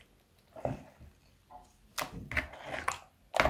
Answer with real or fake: real